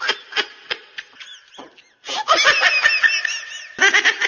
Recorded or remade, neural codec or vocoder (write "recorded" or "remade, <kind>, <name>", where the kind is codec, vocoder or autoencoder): recorded